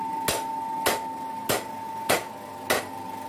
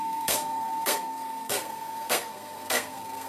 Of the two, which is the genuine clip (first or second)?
first